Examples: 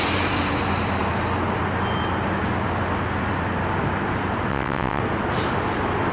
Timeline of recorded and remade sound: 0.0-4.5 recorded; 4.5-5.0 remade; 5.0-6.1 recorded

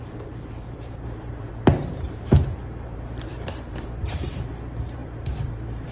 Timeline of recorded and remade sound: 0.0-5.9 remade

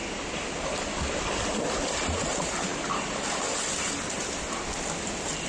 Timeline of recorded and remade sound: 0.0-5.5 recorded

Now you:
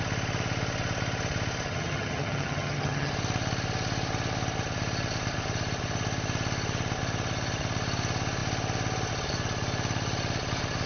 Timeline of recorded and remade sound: 0.0-1.7 recorded; 1.7-3.1 remade; 3.1-10.9 recorded

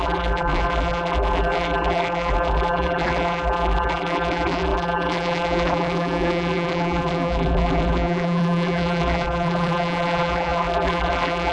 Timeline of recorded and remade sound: 0.0-11.5 remade

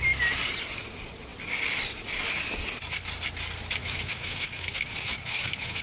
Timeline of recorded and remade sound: 0.0-3.8 recorded; 3.8-5.8 remade